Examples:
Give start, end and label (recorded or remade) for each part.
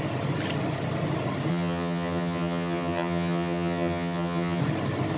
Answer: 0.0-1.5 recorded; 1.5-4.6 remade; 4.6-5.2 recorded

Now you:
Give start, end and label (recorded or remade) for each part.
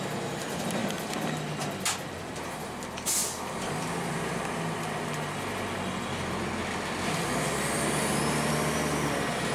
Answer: 0.0-9.5 recorded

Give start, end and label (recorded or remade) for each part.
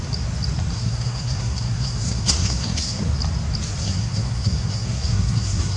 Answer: 0.0-0.7 recorded; 0.7-3.0 remade; 3.0-3.8 recorded; 3.8-5.8 remade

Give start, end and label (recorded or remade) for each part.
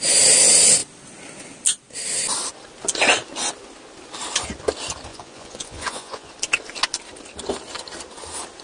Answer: 0.0-5.1 recorded; 5.1-6.3 remade; 6.3-8.6 recorded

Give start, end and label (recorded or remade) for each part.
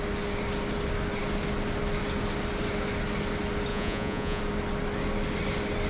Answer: 0.0-3.7 recorded; 3.7-4.4 remade; 4.4-5.9 recorded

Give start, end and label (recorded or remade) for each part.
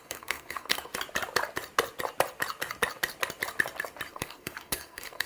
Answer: 0.0-0.9 remade; 0.9-4.1 recorded; 4.1-5.3 remade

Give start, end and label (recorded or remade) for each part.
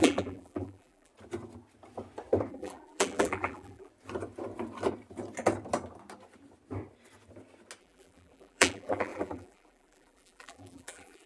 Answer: 0.0-1.1 remade; 1.1-2.5 recorded; 2.5-3.9 remade; 3.9-7.8 recorded; 7.8-11.3 remade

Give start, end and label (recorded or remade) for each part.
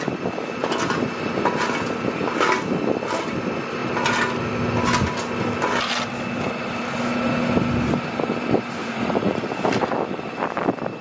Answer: 0.0-8.8 recorded; 8.8-9.4 remade; 9.4-11.0 recorded